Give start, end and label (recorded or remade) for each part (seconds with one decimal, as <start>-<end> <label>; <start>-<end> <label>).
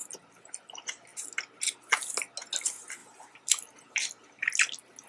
0.0-0.6 remade; 0.6-3.0 recorded; 3.0-4.4 remade; 4.4-5.1 recorded